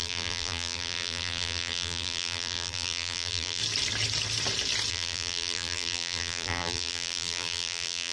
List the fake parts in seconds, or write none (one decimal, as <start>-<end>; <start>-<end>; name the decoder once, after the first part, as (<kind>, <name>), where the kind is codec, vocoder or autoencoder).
0.0-3.6 (vocoder, BigVGAN v2); 4.9-8.1